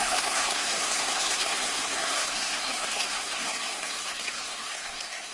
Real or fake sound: fake